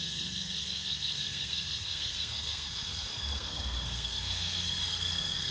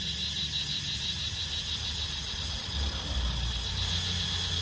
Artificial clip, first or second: first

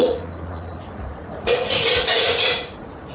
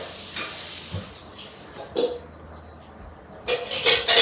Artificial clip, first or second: first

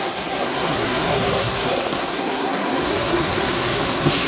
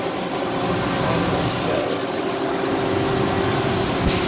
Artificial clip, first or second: first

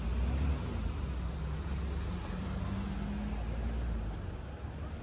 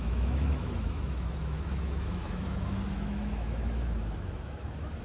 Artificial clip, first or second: second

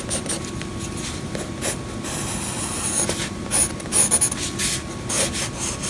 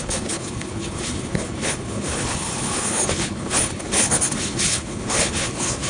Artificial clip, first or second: second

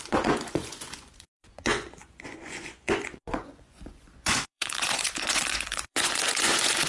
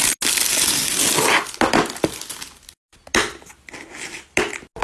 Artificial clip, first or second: first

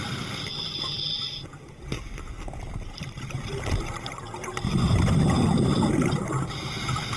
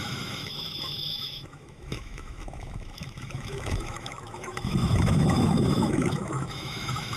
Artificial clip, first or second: second